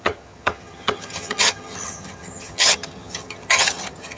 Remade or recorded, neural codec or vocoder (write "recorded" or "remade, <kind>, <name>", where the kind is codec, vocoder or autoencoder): remade, vocoder, HiFi-GAN